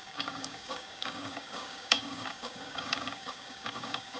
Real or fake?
fake